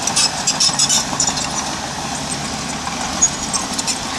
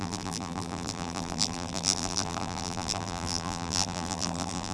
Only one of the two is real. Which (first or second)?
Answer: first